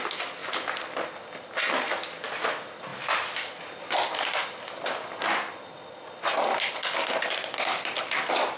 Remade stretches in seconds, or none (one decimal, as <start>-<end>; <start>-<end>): none